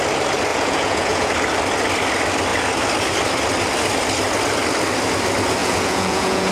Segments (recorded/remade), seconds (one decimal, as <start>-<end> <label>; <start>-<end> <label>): 0.0-0.5 recorded; 0.5-1.3 remade; 1.3-5.6 recorded; 5.6-6.5 remade